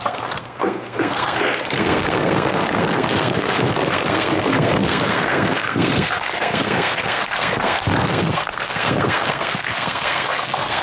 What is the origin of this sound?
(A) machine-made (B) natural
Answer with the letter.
A